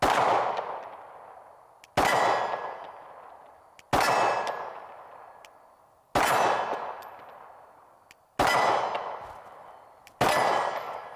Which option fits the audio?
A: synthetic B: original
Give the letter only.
B